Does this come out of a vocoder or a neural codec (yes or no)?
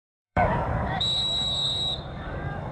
yes